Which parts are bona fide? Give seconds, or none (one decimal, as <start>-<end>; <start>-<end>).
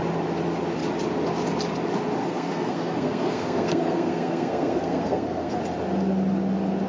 0.0-2.2; 5.6-6.9